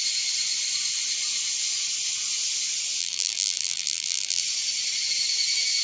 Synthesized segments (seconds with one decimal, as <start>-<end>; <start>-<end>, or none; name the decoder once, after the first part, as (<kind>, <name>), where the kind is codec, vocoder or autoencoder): 3.0-4.4 (vocoder, BigVGAN v2)

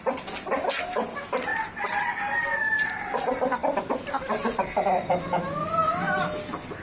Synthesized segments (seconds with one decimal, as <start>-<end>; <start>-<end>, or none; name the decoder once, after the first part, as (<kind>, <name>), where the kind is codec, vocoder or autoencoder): 1.5-2.1 (vocoder, BigVGAN v2); 3.6-5.3

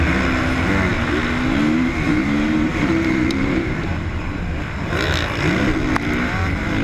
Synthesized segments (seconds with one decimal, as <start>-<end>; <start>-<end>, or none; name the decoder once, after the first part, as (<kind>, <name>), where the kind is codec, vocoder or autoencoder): 2.1-4.4 (vocoder, BigVGAN v2)

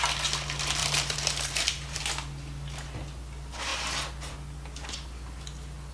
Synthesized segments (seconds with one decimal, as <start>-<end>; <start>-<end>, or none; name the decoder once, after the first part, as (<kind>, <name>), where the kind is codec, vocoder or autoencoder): 0.8-2.0 (vocoder, BigVGAN v2)

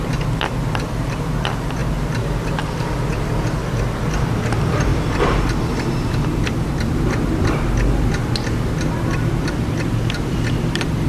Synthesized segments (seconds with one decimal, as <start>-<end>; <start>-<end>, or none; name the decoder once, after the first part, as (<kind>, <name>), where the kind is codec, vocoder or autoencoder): 0.0-1.8 (vocoder, BigVGAN v2); 2.5-4.9; 5.6-11.1